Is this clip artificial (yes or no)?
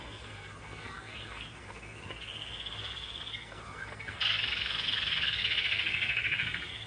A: yes